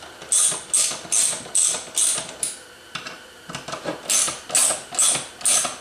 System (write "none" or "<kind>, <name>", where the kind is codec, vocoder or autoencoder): none